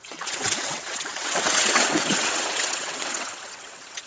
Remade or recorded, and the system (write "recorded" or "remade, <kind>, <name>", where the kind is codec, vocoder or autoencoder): remade, vocoder, WaveNeXt